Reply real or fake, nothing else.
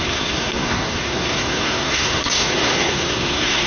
fake